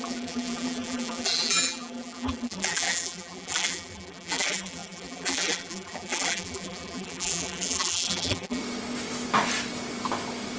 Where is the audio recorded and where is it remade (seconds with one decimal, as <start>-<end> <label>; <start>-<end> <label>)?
0.0-8.6 remade; 8.6-10.6 recorded